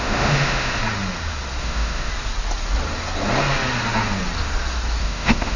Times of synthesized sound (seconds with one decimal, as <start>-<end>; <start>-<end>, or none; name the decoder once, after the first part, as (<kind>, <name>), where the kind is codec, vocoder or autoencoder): 0.0-0.8 (autoencoder, DAC-VAE); 1.6-2.1; 5.0-5.6